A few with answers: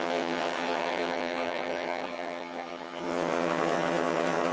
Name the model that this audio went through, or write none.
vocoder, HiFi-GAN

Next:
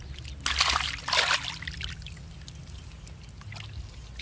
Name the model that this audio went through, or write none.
none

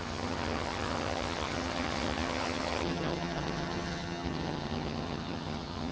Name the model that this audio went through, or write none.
vocoder, HiFi-GAN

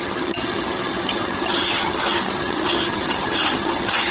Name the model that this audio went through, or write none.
vocoder, HiFi-GAN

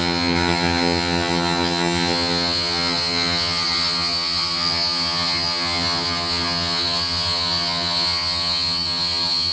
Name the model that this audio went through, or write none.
vocoder, HiFi-GAN